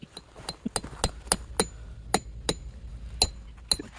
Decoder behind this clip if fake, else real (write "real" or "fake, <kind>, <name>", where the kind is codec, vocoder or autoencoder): real